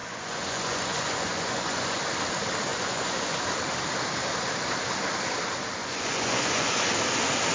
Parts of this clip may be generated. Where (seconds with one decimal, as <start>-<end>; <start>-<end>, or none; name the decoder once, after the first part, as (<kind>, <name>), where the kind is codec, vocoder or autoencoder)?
0.0-2.0 (vocoder, Vocos); 2.7-3.4; 5.8-6.9